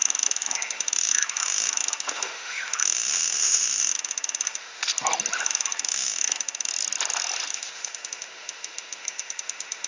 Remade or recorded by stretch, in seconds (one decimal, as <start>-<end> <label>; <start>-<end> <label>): 0.0-4.8 remade; 4.8-5.4 recorded; 5.4-6.7 remade; 6.7-7.5 recorded; 7.5-9.9 remade